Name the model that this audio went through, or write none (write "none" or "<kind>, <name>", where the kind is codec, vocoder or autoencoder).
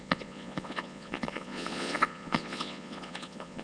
vocoder, Vocos